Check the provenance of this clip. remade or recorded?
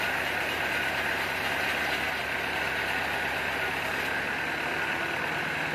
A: recorded